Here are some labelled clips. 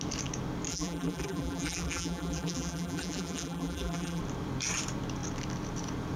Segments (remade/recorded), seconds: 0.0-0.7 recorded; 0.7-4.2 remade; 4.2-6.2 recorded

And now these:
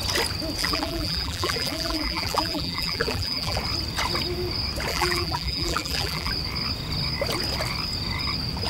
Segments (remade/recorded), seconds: 0.0-0.6 recorded; 0.6-3.6 remade; 3.6-4.9 recorded; 4.9-6.3 remade; 6.3-8.7 recorded

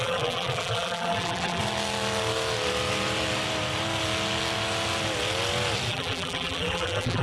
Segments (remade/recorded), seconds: 0.0-1.6 remade; 1.6-5.9 recorded; 5.9-7.2 remade